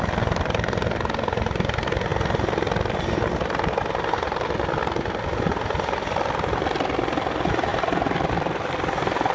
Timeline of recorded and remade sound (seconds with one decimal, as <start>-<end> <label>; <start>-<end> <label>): 0.0-7.7 recorded; 7.7-8.3 remade; 8.3-9.3 recorded